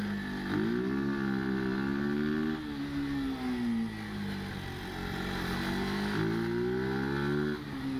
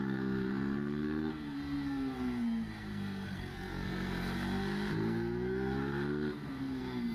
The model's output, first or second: second